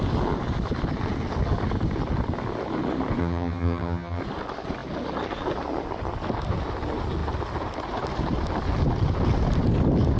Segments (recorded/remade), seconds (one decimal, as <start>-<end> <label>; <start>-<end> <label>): 0.0-3.2 recorded; 3.2-4.2 remade; 4.2-10.2 recorded